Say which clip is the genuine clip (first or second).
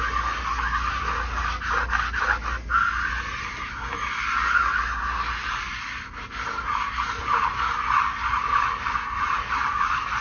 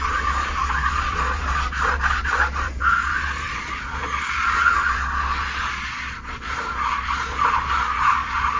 first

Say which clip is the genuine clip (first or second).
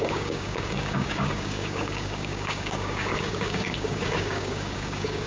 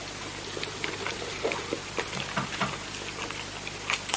second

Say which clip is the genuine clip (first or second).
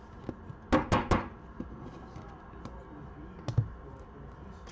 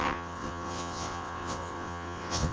first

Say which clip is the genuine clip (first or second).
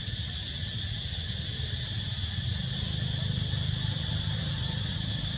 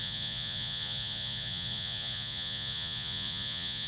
first